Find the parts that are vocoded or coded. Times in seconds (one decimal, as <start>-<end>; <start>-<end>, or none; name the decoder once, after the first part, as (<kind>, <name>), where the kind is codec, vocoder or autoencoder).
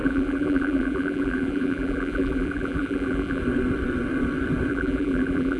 0.0-3.4 (vocoder, BigVGAN v2); 4.7-5.6